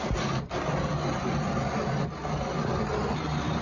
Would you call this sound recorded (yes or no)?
yes